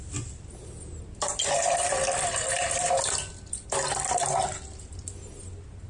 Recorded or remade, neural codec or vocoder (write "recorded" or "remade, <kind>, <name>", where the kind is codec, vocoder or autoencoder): recorded